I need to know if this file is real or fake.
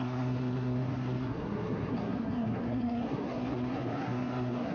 fake